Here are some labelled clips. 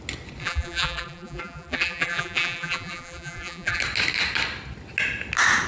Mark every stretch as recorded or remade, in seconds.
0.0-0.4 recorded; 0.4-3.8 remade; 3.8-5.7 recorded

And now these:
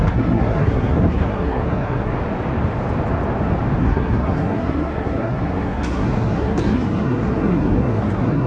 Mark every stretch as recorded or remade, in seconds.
0.0-2.1 remade; 2.1-3.8 recorded; 3.8-8.5 remade

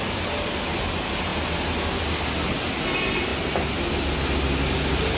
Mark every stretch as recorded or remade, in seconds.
0.0-5.2 recorded

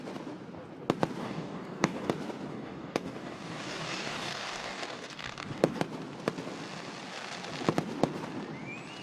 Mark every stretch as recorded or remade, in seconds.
0.0-1.2 recorded; 1.2-2.1 remade; 2.1-2.5 recorded; 2.5-5.8 remade; 5.8-9.0 recorded

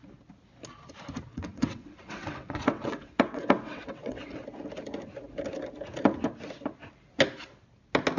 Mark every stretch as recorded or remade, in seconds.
0.0-1.3 recorded; 1.3-4.4 remade; 4.4-8.2 recorded

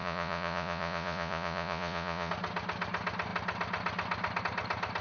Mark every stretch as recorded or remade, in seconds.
0.0-2.3 remade; 2.3-5.0 recorded

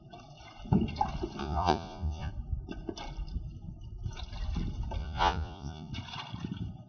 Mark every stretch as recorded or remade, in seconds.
0.0-1.4 recorded; 1.4-2.3 remade; 2.3-5.0 recorded; 5.0-5.9 remade; 5.9-6.9 recorded

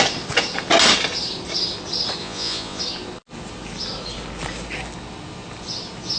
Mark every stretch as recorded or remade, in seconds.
0.0-2.2 recorded; 2.2-2.8 remade; 2.8-6.2 recorded